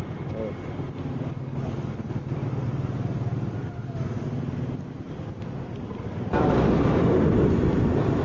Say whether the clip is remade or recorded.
recorded